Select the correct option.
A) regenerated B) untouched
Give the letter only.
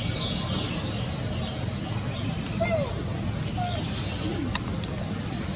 B